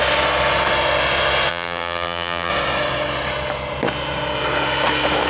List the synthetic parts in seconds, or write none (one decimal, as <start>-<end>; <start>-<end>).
1.5-2.5